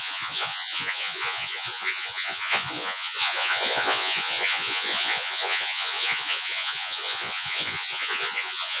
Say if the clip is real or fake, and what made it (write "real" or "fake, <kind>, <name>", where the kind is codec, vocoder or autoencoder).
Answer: fake, vocoder, Vocos